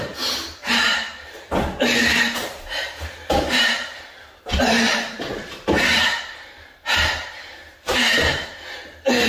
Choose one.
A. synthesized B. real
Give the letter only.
A